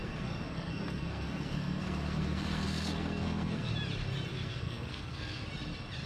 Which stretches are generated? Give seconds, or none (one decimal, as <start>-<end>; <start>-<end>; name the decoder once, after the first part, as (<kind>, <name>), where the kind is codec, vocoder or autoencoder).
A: 0.0-3.7 (codec, SNAC); 4.3-5.5